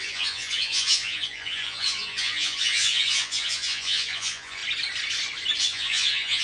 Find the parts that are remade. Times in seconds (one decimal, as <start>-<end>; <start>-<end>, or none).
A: 0.0-4.6; 5.6-6.4